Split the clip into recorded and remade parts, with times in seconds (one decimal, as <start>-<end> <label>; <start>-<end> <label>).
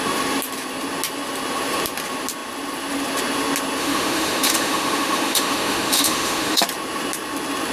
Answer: 0.0-3.8 recorded; 3.8-6.6 remade; 6.6-7.7 recorded